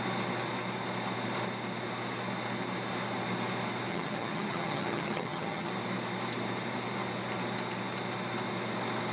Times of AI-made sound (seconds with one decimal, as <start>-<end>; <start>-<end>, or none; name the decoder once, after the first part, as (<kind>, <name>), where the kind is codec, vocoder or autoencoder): 3.9-5.7 (vocoder, HiFi-GAN)